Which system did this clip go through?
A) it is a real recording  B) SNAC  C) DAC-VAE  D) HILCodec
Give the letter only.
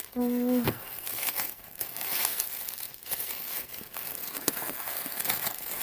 B